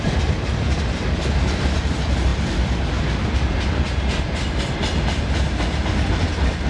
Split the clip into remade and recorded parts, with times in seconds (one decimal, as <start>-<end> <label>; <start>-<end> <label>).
0.0-6.7 recorded